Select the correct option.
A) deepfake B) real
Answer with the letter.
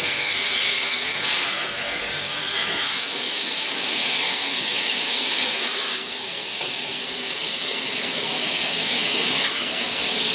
A